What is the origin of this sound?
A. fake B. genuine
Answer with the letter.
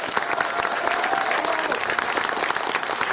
B